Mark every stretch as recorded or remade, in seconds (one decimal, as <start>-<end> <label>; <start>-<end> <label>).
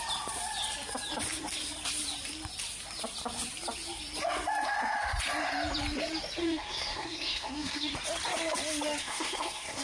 0.0-6.4 recorded; 6.4-7.9 remade; 7.9-9.0 recorded; 9.0-9.8 remade